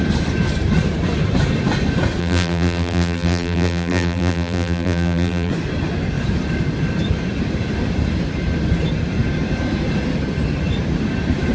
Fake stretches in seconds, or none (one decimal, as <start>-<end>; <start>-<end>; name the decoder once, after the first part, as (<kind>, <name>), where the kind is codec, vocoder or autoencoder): 2.2-5.5 (vocoder, BigVGAN v2)

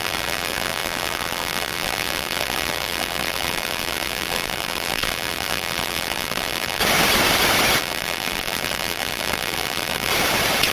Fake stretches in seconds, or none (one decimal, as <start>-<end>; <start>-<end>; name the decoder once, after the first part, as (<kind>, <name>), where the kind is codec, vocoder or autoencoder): 0.0-6.8 (vocoder, BigVGAN v2); 7.8-10.1

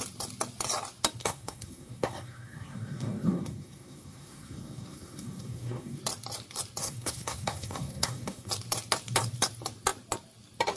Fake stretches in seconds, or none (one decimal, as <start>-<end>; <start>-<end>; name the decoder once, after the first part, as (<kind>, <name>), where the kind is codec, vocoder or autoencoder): 1.2-6.0 (codec, SNAC); 6.8-8.5